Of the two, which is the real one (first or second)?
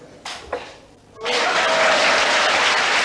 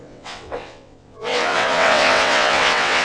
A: first